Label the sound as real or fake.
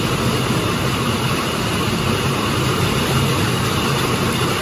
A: fake